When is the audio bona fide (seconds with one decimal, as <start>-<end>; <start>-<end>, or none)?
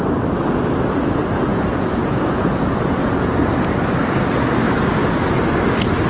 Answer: 0.0-1.5; 3.3-6.1